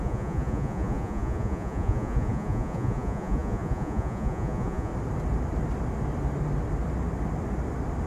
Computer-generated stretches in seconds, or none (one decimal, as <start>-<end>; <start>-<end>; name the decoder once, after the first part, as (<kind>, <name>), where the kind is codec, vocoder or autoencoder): 0.0-4.9 (vocoder, Vocos)